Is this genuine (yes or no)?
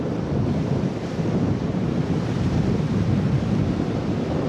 no